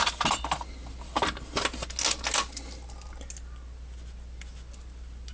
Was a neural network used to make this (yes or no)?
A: no